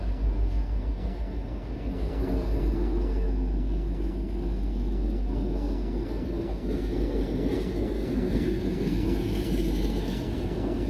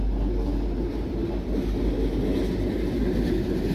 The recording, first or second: second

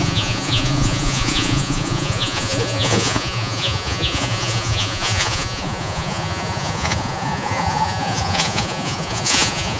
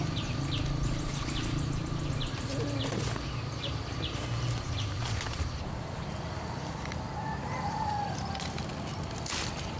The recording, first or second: second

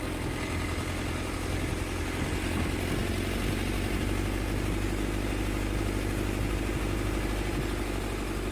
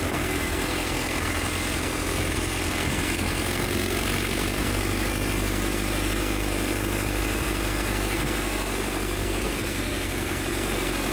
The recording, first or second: first